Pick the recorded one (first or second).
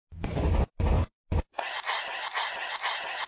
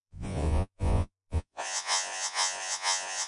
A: first